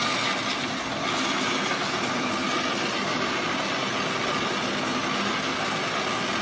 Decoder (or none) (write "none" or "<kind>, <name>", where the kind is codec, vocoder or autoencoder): none